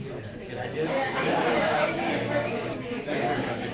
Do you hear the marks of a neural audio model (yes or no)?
yes